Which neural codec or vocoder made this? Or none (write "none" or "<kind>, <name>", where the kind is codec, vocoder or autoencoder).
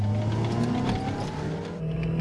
none